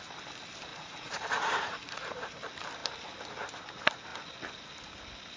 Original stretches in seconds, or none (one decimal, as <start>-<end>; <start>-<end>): 0.0-0.7; 2.3-5.4